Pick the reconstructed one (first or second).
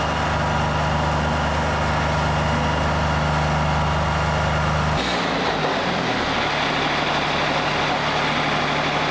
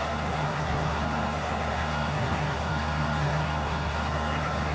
second